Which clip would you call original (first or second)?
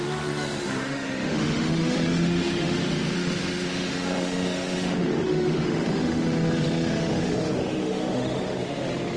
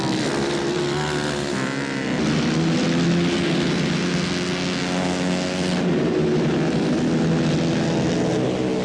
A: second